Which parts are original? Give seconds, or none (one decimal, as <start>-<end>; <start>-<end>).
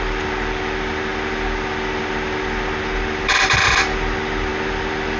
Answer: 0.0-5.2